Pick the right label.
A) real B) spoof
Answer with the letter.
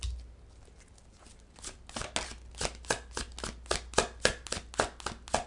A